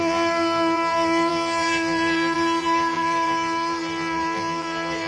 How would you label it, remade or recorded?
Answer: remade